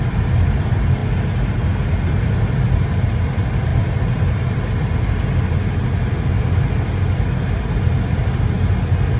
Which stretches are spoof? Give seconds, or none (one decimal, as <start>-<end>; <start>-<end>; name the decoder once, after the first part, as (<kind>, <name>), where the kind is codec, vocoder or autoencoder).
none